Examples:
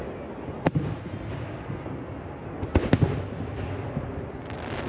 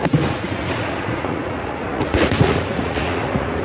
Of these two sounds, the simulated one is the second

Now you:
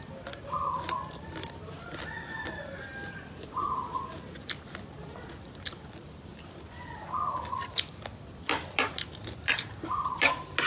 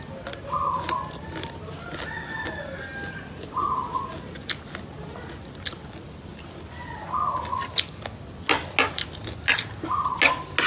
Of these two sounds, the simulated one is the first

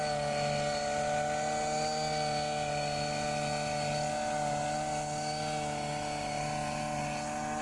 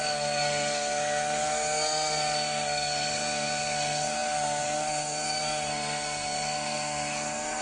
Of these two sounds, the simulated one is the second